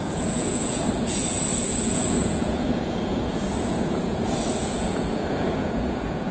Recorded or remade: remade